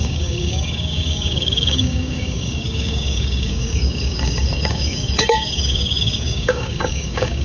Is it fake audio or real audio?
fake